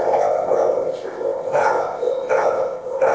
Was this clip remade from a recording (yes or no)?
yes